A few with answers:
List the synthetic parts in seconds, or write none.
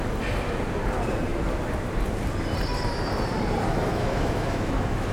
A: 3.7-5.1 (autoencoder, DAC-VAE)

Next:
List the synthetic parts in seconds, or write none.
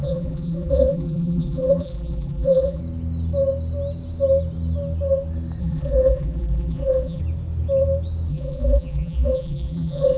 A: 0.0-2.8 (vocoder, BigVGAN v2); 5.6-7.2; 8.3-10.2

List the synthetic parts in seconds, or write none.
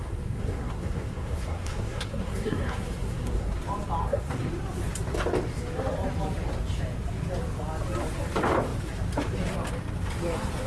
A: 0.0-3.6 (codec, SNAC); 4.0-4.5